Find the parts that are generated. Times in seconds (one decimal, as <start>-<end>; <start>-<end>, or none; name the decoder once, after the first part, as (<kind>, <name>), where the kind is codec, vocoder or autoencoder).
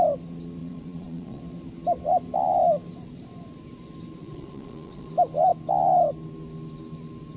0.6-1.4 (vocoder, Vocos); 4.2-5.1